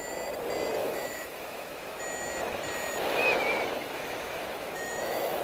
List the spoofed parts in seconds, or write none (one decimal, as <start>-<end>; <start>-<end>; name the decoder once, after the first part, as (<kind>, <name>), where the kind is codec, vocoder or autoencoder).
0.8-2.0 (autoencoder, DAC-VAE); 3.2-5.4